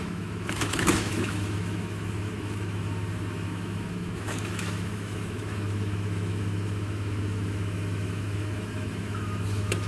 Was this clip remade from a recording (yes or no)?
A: yes